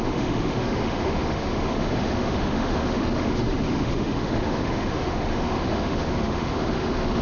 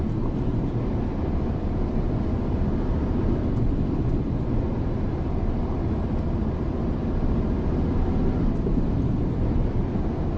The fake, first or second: first